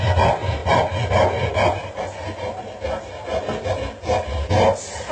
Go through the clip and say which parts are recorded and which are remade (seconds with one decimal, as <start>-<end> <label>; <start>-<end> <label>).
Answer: 0.0-5.1 recorded